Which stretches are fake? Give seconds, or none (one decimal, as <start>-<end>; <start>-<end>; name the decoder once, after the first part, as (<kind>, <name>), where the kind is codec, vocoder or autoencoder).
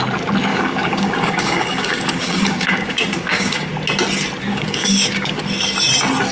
0.5-3.7 (codec, DAC); 4.5-5.4